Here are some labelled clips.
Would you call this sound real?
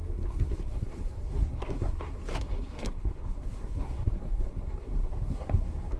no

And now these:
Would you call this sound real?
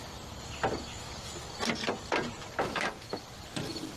yes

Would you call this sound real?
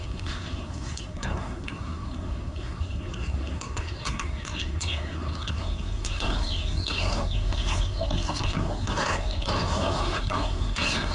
no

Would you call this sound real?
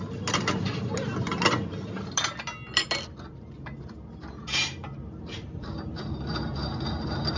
yes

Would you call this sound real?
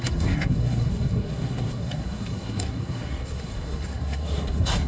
no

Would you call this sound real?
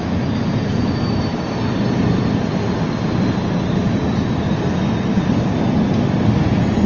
yes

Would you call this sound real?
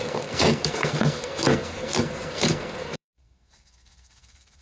no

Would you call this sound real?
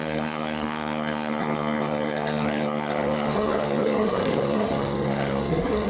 no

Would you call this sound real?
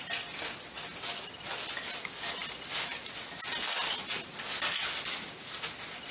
yes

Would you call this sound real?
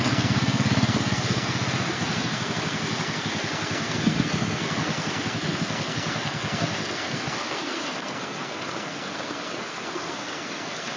no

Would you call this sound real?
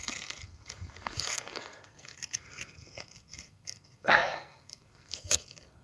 no